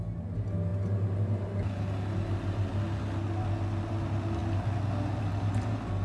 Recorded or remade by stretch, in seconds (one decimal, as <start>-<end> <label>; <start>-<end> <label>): 0.0-6.0 recorded